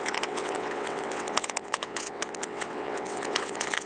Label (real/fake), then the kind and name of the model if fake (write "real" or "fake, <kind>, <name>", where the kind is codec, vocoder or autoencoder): fake, vocoder, WaveNeXt